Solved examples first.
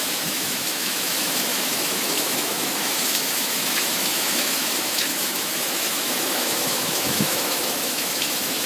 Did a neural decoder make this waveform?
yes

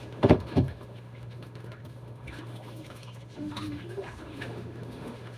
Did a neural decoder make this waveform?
yes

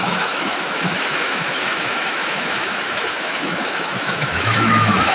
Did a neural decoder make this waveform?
yes